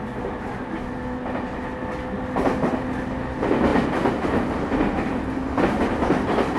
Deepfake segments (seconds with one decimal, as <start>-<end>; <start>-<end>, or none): 3.7-5.6